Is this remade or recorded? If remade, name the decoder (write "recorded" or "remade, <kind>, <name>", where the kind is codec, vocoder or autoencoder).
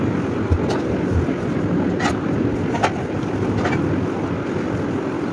recorded